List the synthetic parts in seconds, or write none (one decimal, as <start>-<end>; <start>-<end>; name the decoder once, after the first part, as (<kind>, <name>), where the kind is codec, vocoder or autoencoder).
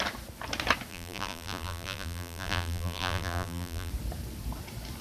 0.9-3.9 (vocoder, BigVGAN v2)